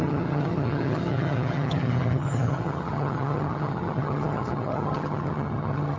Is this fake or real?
fake